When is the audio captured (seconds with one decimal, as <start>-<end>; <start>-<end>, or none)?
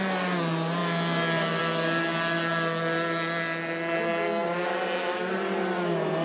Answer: 0.0-6.2